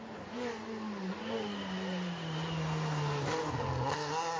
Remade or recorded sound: recorded